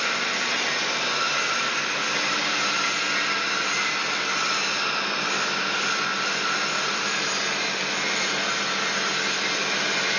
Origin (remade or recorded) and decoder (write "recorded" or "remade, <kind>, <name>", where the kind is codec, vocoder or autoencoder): recorded